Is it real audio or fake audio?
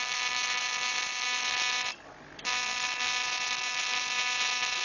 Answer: real